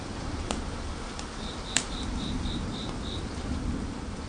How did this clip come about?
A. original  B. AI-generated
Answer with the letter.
B